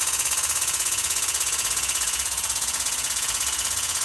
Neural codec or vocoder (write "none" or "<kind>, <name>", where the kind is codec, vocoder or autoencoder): vocoder, Vocos